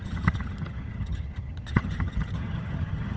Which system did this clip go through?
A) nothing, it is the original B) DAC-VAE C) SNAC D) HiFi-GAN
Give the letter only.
D